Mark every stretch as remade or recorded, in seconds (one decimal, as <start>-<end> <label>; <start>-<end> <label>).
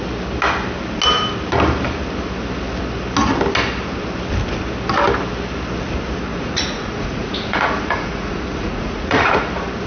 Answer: 0.0-6.3 recorded; 6.3-9.5 remade; 9.5-9.9 recorded